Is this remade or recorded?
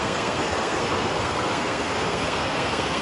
remade